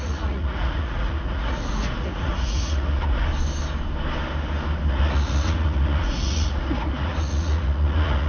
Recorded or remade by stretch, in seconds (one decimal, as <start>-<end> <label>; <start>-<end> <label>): 0.0-3.3 remade; 3.3-4.9 recorded; 4.9-8.3 remade